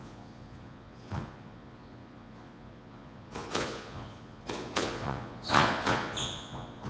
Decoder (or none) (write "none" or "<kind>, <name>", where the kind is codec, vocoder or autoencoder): vocoder, Vocos